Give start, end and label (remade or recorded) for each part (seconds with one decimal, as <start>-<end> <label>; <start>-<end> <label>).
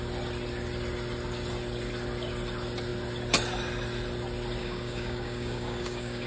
0.0-4.6 recorded; 4.6-6.3 remade